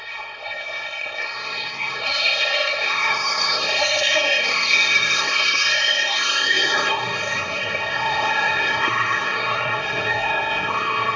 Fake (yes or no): yes